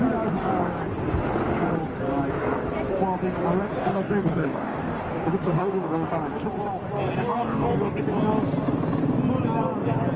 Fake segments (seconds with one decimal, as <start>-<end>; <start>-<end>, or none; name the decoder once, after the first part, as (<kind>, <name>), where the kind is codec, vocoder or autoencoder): 3.8-5.0 (codec, DAC); 5.5-6.1; 7.2-8.0